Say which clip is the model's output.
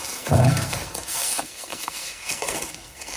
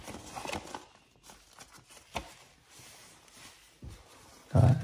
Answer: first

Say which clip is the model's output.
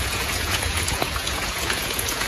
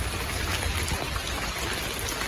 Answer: first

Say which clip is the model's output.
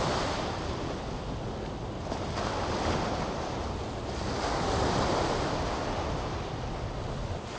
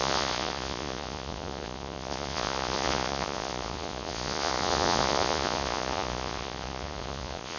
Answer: second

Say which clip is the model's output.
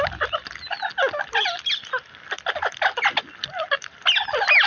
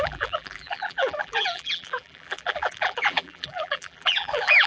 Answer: second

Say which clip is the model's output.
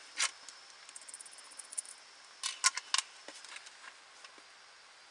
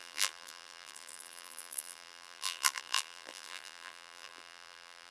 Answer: second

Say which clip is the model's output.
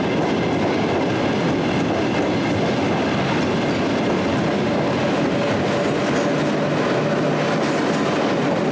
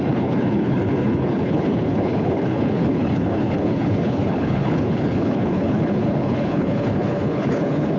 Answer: second